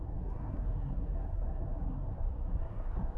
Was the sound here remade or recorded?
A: remade